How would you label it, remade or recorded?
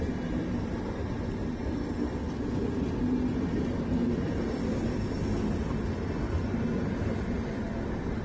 recorded